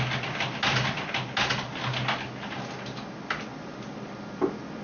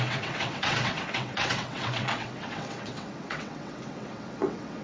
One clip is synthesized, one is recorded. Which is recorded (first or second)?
first